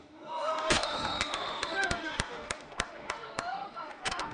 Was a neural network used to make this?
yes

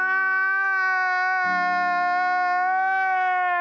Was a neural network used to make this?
no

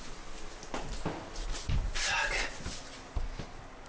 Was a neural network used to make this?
no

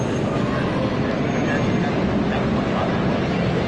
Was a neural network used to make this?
no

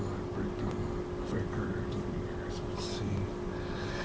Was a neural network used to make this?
no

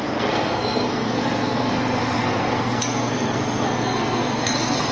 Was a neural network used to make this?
yes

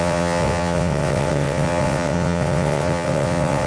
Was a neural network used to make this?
yes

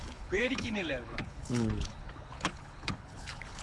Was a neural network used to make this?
yes